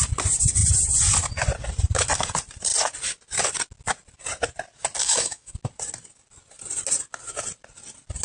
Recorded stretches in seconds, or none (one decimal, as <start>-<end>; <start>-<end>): 0.0-5.0; 5.5-8.2